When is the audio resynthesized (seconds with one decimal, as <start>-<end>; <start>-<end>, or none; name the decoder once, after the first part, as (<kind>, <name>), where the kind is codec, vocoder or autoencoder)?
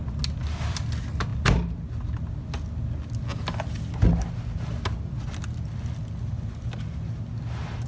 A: none